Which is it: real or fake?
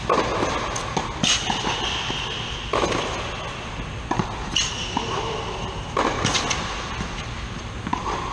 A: real